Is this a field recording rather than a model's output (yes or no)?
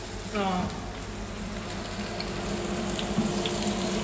yes